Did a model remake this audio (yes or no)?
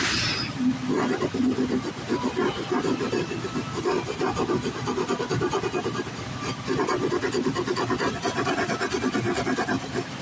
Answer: no